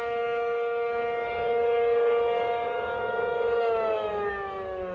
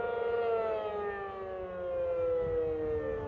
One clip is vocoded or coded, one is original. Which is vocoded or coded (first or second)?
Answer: first